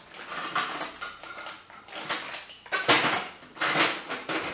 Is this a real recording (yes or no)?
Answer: yes